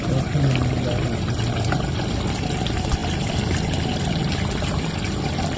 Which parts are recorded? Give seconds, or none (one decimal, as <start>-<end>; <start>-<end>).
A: 0.0-5.6